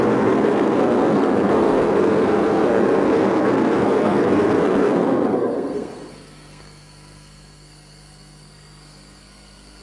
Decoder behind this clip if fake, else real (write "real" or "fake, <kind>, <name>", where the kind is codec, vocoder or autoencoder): fake, codec, SNAC